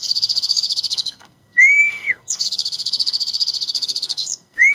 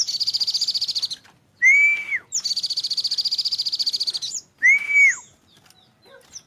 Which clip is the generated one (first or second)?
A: first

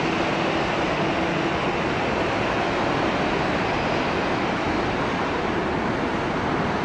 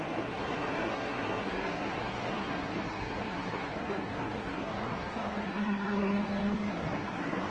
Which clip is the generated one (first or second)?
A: second